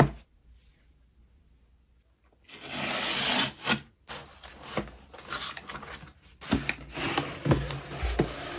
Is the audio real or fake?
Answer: real